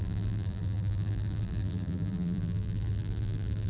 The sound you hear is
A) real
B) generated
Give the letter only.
B